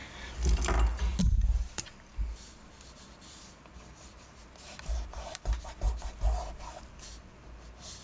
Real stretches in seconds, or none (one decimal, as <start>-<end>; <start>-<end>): 2.1-6.9